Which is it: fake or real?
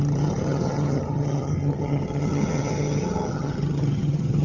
fake